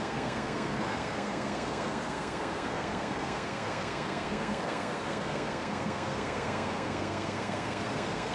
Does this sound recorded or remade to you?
remade